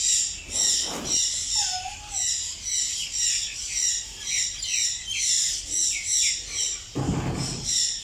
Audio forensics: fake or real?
real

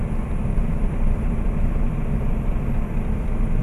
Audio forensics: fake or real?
real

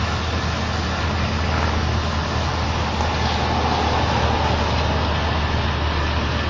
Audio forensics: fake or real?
real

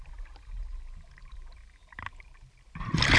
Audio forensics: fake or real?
fake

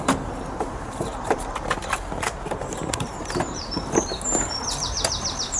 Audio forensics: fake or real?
fake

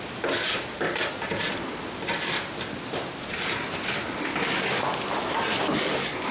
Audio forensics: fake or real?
real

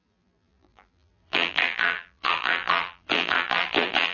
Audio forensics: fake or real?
fake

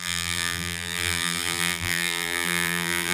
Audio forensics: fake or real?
fake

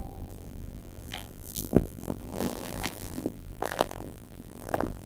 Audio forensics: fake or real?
fake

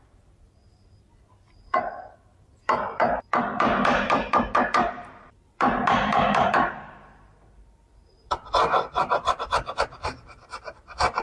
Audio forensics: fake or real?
fake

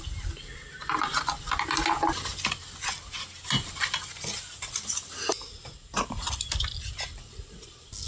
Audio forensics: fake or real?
real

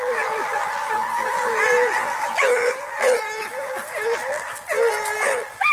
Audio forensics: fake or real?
fake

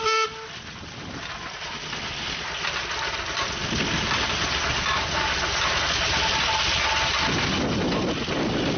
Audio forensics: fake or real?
real